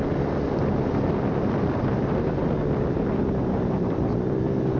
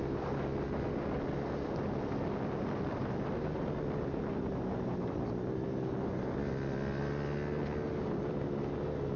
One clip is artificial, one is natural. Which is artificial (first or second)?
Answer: first